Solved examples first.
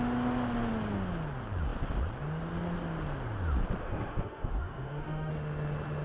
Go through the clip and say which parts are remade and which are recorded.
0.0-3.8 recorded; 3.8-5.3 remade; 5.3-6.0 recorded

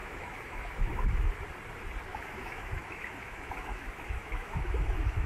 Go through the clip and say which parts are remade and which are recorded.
0.0-1.3 remade; 1.3-2.1 recorded; 2.1-5.3 remade

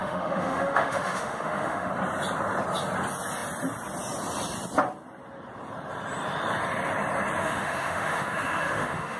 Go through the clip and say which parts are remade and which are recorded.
0.0-1.9 remade; 1.9-7.4 recorded; 7.4-9.2 remade

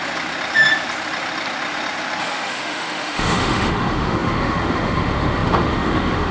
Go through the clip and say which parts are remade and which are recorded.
0.0-2.2 recorded; 2.2-6.3 remade

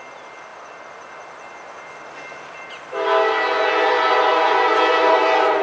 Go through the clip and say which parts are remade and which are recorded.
0.0-5.6 recorded

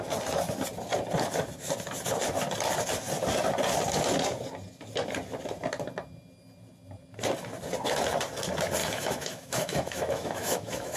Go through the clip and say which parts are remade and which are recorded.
0.0-8.8 recorded; 8.8-11.0 remade

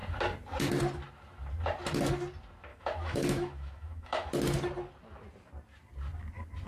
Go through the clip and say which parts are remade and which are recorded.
0.0-2.7 recorded; 2.7-4.3 remade; 4.3-6.7 recorded

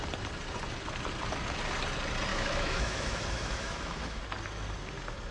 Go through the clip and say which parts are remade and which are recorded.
0.0-2.3 recorded; 2.3-4.2 remade; 4.2-5.3 recorded